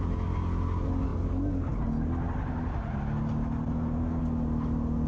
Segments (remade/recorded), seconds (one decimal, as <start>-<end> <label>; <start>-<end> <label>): 0.0-5.1 recorded